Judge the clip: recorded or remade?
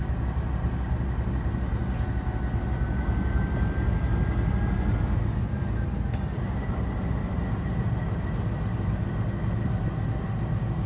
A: recorded